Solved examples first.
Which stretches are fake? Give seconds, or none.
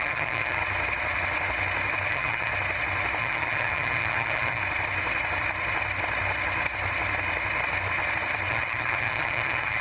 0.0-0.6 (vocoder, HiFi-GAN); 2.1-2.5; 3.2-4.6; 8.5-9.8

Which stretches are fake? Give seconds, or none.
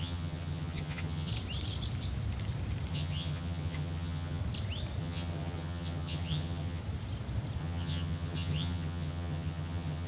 0.0-1.3 (vocoder, HiFi-GAN); 2.9-4.4; 5.0-6.8; 7.6-10.1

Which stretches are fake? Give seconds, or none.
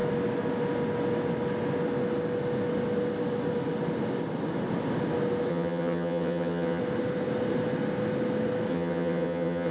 5.5-6.8 (vocoder, HiFi-GAN); 8.7-9.7